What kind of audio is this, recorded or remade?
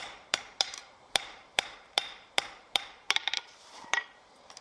remade